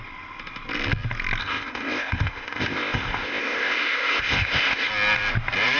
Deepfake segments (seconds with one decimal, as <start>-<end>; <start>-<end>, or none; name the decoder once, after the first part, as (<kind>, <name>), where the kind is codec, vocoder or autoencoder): 1.4-4.9 (codec, ZipCodec)

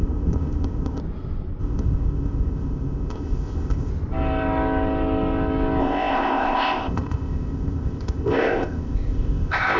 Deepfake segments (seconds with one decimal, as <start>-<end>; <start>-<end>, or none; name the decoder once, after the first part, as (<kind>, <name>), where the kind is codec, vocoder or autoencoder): 0.0-1.0 (codec, ZipCodec); 1.6-3.9; 5.8-9.8

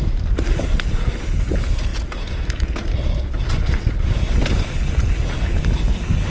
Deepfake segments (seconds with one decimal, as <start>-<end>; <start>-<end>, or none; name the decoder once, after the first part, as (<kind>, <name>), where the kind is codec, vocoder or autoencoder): none

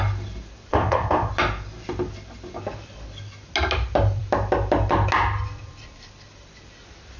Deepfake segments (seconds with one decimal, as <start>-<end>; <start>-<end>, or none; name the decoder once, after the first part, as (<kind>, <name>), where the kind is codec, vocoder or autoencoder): 0.7-1.3 (codec, ZipCodec)

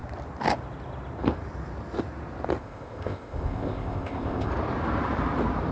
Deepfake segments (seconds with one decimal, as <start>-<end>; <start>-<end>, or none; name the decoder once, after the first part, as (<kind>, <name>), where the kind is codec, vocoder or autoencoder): 2.6-4.5 (codec, ZipCodec)

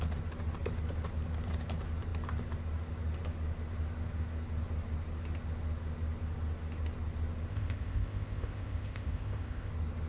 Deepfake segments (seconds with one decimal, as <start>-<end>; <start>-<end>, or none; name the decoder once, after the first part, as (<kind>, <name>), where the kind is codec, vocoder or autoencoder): 7.5-9.7 (codec, ZipCodec)